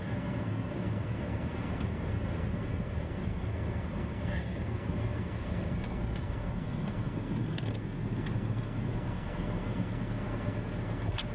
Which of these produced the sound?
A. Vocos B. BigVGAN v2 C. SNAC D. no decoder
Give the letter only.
C